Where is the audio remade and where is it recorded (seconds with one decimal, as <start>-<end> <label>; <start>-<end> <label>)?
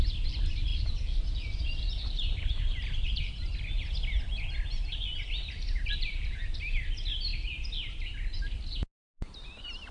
0.0-0.7 recorded; 0.7-3.3 remade; 3.3-5.8 recorded; 5.8-6.8 remade; 6.8-9.9 recorded